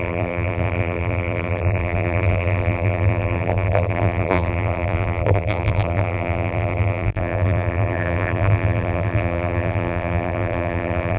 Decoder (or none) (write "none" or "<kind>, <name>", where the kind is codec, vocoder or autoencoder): vocoder, BigVGAN v2